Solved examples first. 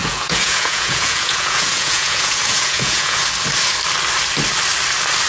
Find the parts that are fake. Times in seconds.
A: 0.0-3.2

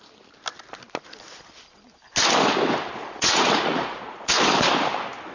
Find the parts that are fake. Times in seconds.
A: 3.0-4.3

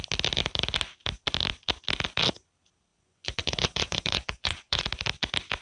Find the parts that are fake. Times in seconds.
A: 2.9-4.8

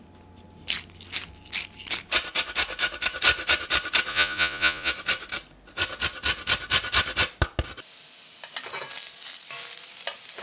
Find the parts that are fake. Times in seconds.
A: 4.1-4.9

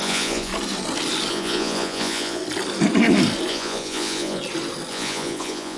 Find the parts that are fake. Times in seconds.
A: 0.0-0.5; 1.3-2.4; 3.5-4.4; 4.9-5.8